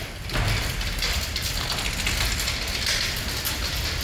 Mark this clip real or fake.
real